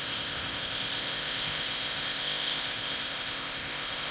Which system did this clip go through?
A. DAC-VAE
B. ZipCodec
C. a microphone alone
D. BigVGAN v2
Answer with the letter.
B